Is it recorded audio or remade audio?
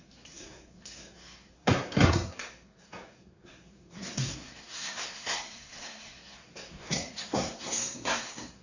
remade